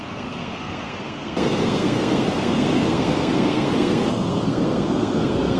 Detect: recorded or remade remade